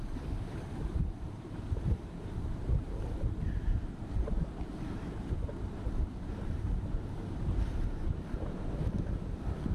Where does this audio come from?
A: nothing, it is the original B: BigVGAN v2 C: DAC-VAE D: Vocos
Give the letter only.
B